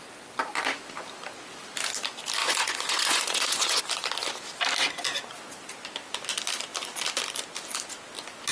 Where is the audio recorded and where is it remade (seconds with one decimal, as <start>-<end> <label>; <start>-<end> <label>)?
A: 0.0-2.4 recorded; 2.4-3.8 remade; 3.8-8.5 recorded